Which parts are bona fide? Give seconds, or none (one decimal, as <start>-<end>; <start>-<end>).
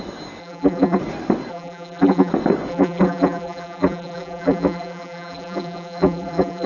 0.0-0.4; 1.0-1.5; 2.3-2.7